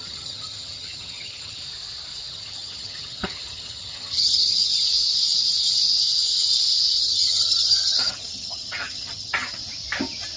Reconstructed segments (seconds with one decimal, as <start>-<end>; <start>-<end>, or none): 0.0-1.6; 2.3-4.7; 7.0-9.6